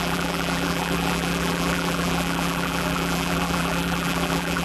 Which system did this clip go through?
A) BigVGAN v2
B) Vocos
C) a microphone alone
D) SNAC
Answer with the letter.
A